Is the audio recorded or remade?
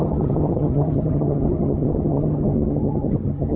remade